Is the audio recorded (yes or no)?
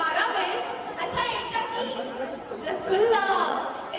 no